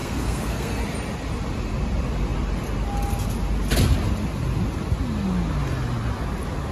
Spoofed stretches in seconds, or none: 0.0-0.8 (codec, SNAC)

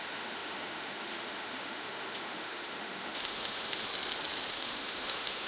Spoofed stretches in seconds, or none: 0.0-3.9 (autoencoder, DAC-VAE); 4.5-5.5